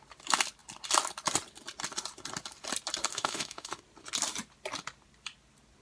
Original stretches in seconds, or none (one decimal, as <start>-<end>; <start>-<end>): 0.0-3.1; 3.8-5.8